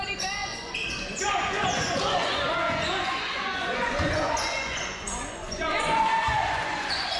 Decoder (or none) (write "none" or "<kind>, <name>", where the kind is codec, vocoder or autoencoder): vocoder, Vocos